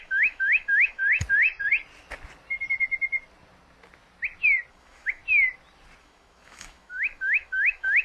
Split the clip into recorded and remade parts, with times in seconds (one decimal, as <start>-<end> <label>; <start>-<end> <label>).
0.0-1.0 remade; 1.0-4.7 recorded; 4.7-5.2 remade; 5.2-6.0 recorded; 6.0-8.0 remade